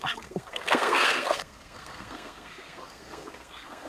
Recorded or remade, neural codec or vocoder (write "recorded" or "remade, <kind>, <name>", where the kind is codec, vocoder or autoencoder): remade, codec, SNAC